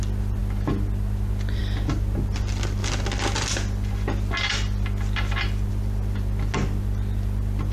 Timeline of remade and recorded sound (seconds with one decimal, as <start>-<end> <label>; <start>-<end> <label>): 0.0-7.7 recorded